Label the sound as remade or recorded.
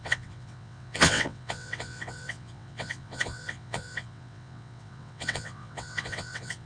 remade